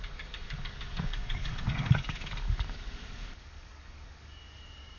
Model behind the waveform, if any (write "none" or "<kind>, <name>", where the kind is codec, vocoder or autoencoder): codec, DAC